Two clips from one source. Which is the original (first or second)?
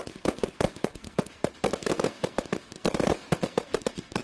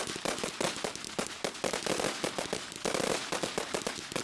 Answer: second